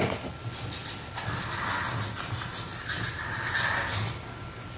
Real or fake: real